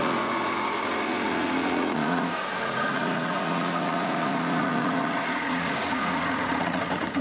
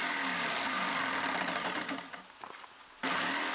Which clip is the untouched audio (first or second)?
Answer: second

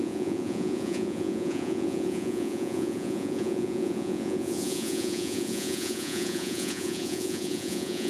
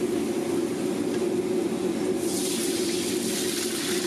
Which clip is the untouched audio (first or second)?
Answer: second